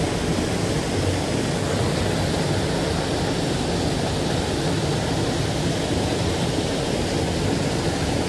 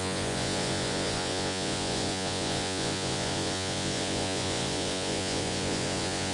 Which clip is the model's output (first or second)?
second